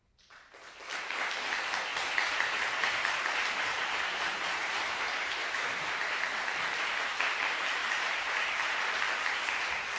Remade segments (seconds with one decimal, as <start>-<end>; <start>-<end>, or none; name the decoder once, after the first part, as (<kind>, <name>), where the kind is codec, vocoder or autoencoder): 1.9-6.2 (vocoder, BigVGAN v2); 7.8-8.8